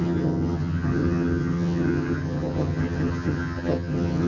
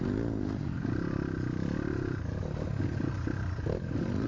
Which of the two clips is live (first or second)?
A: second